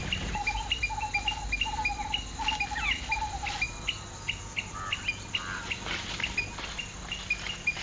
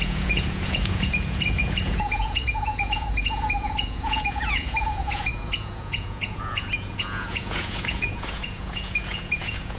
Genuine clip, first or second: first